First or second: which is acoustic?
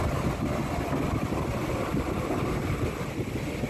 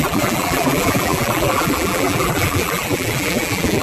first